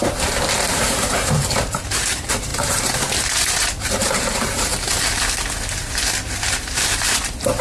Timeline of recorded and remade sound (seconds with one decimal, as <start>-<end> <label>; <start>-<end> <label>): 0.0-0.6 recorded; 0.6-4.7 remade; 4.7-5.7 recorded; 5.7-7.6 remade